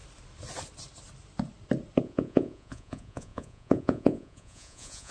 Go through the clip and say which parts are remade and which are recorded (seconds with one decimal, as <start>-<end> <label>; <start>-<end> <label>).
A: 0.0-2.0 recorded; 2.0-5.1 remade